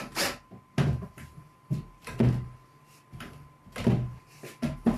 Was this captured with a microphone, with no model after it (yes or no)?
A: yes